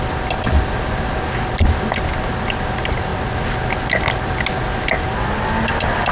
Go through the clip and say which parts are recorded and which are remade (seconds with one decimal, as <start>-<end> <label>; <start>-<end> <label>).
0.0-6.1 recorded